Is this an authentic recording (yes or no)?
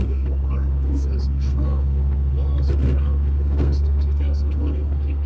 no